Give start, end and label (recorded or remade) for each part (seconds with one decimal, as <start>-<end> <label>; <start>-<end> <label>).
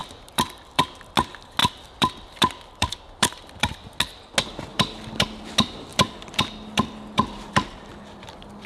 0.0-0.8 remade; 0.8-1.6 recorded; 1.6-4.0 remade; 4.0-4.7 recorded; 4.7-5.4 remade; 5.4-5.9 recorded; 5.9-8.7 remade